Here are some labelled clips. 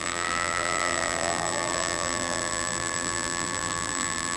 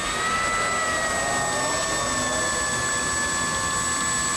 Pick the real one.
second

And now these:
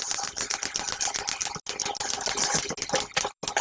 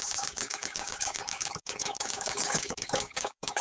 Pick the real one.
first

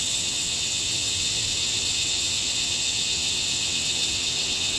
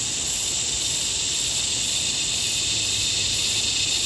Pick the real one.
second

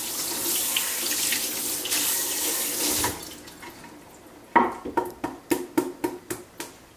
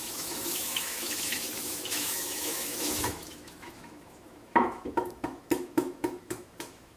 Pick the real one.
first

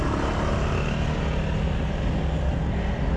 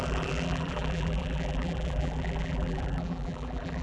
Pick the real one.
first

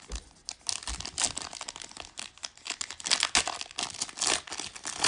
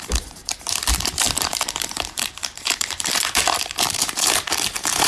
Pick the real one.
first